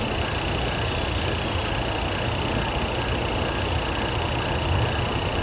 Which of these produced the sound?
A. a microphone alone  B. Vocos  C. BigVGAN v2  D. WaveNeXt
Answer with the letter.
A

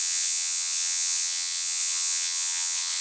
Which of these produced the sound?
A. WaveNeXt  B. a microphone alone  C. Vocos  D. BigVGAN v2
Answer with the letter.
A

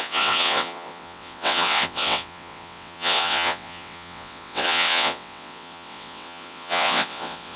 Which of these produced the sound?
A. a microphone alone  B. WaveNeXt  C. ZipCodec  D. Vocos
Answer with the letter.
B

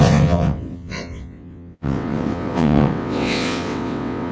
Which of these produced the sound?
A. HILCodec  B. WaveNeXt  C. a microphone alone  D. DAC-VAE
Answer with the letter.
B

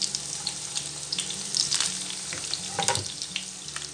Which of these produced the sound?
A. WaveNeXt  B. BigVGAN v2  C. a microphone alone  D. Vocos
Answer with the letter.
C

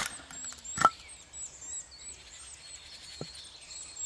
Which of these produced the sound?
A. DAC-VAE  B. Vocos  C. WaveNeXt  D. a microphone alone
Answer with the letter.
D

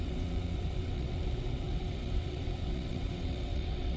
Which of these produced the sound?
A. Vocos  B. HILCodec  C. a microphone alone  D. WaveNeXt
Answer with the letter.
D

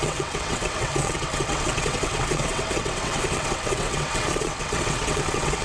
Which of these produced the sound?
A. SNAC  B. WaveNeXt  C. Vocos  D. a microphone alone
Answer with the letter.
B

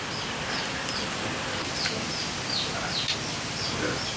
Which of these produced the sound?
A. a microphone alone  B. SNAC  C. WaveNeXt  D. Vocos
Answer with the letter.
A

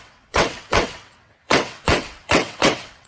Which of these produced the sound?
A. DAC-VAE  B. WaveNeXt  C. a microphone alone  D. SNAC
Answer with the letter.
B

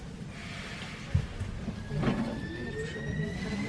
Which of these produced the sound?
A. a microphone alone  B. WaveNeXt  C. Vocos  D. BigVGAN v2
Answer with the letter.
A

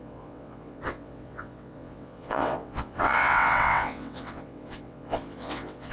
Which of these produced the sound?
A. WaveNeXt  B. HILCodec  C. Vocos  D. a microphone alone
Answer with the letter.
A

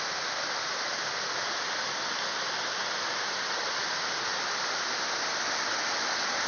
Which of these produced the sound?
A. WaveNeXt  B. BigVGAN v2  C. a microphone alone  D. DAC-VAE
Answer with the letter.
C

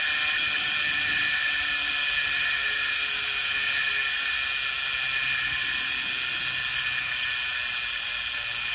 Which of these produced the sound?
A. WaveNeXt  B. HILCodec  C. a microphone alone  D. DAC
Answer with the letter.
C